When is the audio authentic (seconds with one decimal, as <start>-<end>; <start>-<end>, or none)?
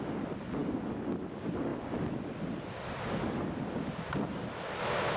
0.0-5.2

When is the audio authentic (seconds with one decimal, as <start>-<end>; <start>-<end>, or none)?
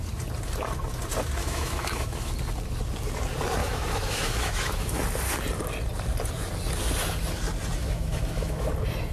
0.0-1.4; 2.3-3.6; 5.0-7.8; 8.7-9.1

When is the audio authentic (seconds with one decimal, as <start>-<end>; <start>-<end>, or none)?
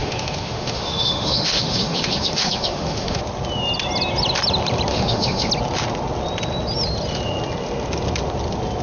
3.2-4.9; 5.5-8.8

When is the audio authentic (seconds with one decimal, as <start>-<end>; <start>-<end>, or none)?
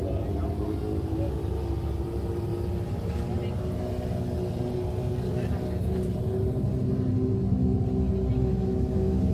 0.0-8.5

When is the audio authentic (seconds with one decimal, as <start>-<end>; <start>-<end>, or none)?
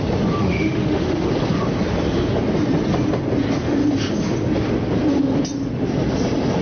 0.0-0.4; 1.3-6.6